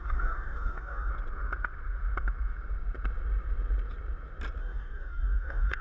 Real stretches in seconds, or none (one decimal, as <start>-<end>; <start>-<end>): 1.1-4.6